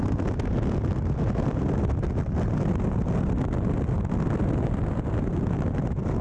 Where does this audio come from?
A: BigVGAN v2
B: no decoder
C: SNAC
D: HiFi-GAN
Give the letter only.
B